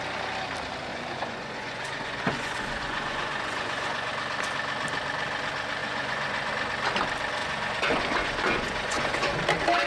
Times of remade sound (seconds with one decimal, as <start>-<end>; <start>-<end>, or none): 0.9-4.1; 5.8-6.5; 7.4-9.4